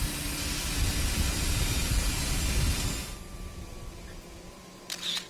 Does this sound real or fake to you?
real